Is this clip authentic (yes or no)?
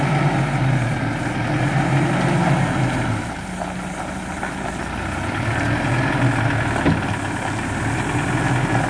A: yes